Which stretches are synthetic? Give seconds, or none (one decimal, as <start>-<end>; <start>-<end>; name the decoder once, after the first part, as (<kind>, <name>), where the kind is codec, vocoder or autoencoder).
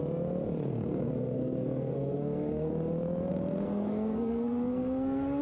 0.7-2.7 (codec, SNAC); 3.3-5.4